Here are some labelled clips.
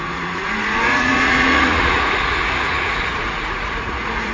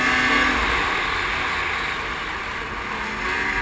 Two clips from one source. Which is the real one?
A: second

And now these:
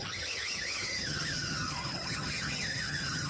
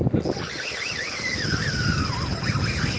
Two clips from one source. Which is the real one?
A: second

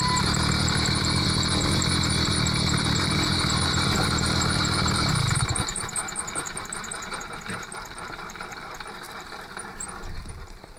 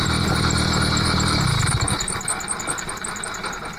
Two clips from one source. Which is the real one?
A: second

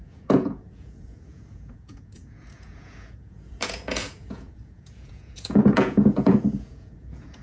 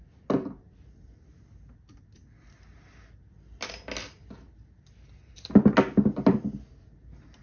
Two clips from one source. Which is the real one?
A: second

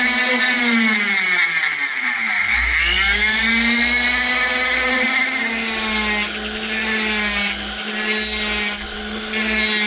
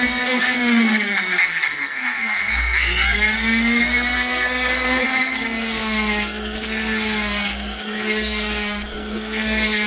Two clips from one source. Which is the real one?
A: first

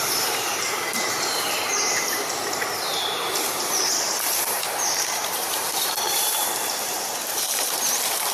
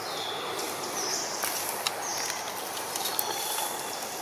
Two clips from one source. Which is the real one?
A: second